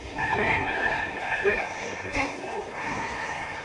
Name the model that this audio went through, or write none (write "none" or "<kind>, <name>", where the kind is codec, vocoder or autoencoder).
codec, SNAC